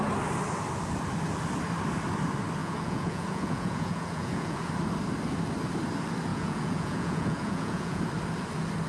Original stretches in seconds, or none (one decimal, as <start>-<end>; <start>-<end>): 0.0-2.6; 4.7-6.3; 8.0-8.9